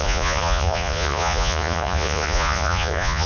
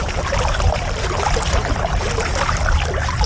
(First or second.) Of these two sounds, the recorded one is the second